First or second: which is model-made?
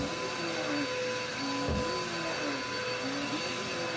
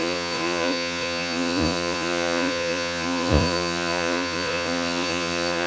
second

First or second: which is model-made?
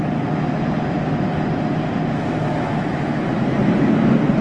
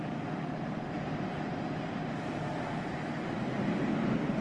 second